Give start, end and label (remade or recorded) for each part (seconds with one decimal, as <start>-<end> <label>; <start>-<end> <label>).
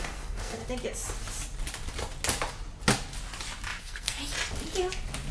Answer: 0.0-0.6 remade; 0.6-3.8 recorded; 3.8-4.2 remade; 4.2-5.3 recorded